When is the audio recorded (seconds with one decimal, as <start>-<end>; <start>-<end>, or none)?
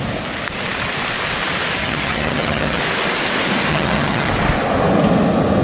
0.0-1.8; 2.8-3.7; 4.3-5.6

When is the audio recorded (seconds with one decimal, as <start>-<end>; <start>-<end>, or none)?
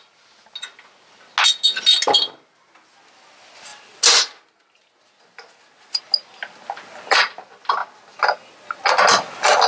0.0-9.7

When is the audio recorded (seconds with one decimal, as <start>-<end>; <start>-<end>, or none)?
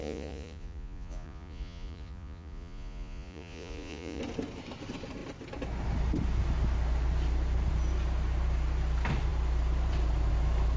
4.2-10.8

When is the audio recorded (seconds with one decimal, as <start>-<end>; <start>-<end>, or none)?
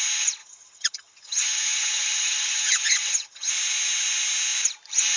0.0-0.4; 3.5-5.2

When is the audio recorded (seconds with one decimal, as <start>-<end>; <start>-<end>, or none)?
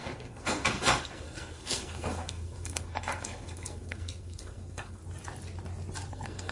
5.0-6.1